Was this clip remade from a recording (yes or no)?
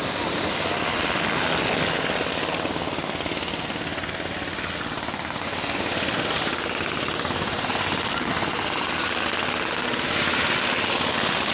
no